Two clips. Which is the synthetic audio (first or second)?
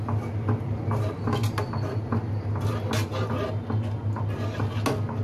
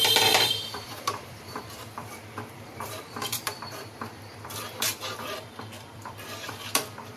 second